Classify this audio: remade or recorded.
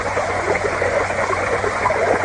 remade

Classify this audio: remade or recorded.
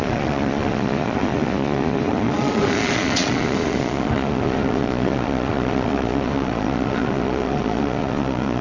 remade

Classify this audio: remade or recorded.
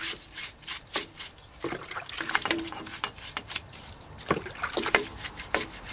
remade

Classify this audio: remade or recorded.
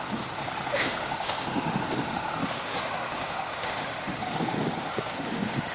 remade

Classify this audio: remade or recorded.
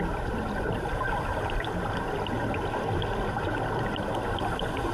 recorded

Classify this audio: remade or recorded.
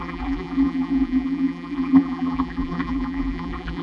remade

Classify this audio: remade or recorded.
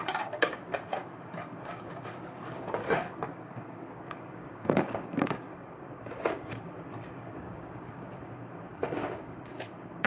remade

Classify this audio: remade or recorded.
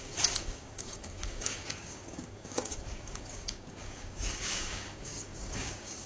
remade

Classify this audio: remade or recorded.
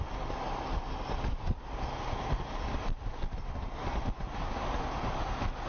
recorded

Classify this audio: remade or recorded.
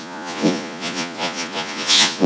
remade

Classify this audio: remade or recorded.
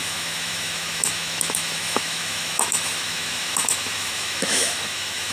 remade